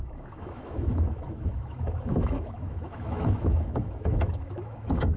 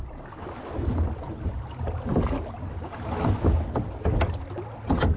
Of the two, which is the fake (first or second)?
first